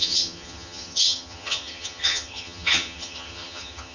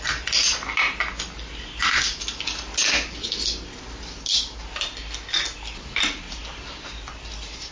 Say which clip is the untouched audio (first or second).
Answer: second